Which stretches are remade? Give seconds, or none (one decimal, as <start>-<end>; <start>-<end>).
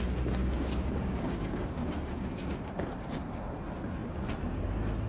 0.4-2.7